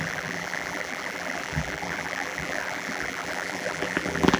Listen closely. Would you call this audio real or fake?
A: fake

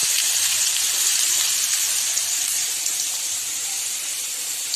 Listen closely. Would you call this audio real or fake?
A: fake